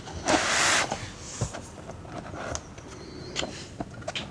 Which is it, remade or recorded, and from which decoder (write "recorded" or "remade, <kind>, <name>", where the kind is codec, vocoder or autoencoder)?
recorded